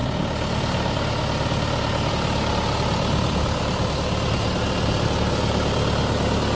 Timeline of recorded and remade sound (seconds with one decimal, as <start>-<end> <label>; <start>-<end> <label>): 0.0-6.5 recorded